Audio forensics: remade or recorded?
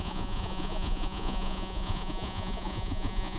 remade